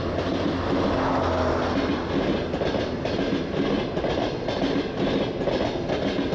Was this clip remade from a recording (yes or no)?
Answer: no